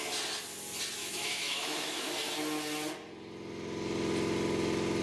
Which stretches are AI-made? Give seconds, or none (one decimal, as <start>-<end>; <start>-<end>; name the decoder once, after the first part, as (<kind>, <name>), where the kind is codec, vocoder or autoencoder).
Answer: 1.0-2.1 (autoencoder, DAC-VAE)